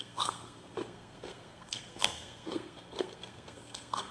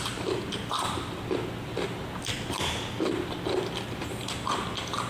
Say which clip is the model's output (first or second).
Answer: first